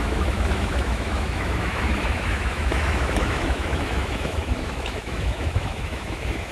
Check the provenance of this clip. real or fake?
fake